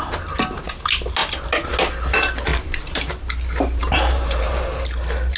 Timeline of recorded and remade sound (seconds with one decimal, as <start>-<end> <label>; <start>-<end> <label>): 0.0-2.5 recorded; 2.5-3.2 remade; 3.2-3.8 recorded; 3.8-4.8 remade; 4.8-5.4 recorded